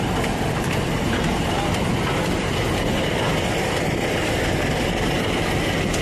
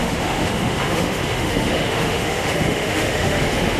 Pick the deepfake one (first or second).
second